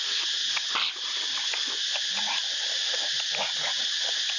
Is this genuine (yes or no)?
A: yes